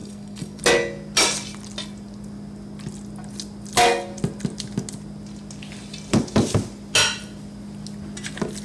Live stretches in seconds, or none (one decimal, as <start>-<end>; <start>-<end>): 0.6-8.6